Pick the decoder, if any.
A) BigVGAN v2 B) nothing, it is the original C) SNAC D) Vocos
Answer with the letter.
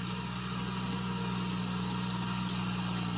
B